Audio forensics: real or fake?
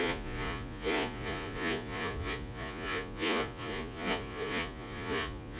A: fake